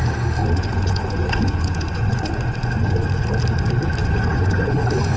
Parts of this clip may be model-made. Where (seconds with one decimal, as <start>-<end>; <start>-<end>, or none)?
0.4-3.2; 4.0-5.2